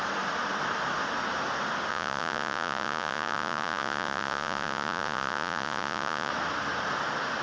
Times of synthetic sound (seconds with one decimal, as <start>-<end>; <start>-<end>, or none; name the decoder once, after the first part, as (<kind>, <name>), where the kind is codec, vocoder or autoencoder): 1.9-6.3 (vocoder, Vocos)